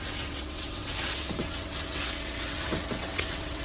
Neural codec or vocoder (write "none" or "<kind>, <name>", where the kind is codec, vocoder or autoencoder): vocoder, WaveNeXt